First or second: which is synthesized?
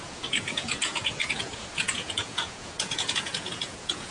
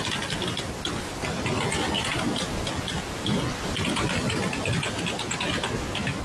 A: first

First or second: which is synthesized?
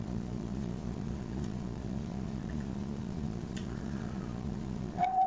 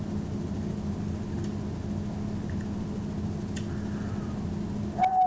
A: first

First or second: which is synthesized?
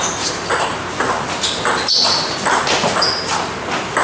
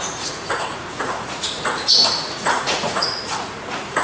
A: second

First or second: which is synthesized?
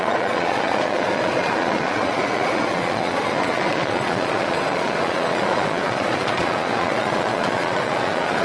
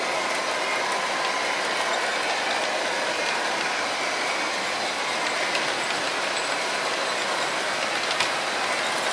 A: first